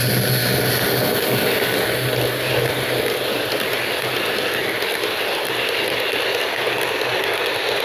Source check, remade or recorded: recorded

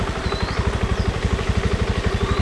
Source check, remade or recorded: recorded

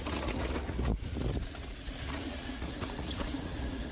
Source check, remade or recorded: remade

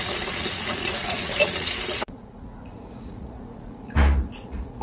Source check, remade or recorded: remade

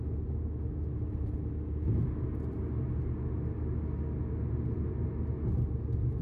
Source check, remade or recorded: recorded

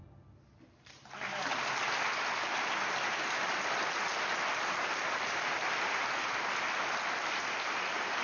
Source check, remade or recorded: recorded